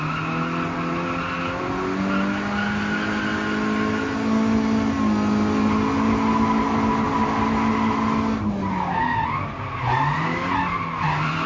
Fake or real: real